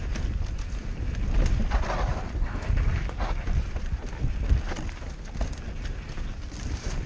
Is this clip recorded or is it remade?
recorded